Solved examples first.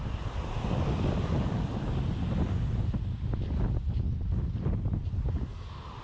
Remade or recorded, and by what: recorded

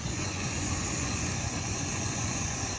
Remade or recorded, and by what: remade, vocoder, Vocos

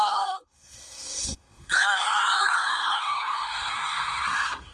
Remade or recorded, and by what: remade, codec, SNAC